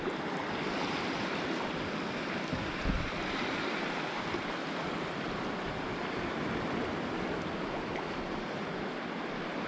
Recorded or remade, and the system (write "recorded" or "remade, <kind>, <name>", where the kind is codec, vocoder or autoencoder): recorded